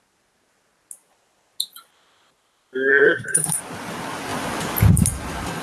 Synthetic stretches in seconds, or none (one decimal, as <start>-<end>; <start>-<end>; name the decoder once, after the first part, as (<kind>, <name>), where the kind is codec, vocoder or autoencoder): 2.9-3.6 (codec, SNAC)